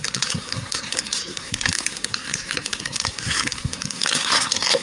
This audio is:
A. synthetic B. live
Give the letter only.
A